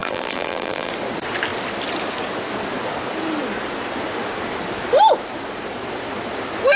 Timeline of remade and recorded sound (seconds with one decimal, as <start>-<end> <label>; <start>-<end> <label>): 0.0-0.9 remade; 0.9-6.8 recorded